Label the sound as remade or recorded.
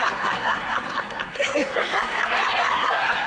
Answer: remade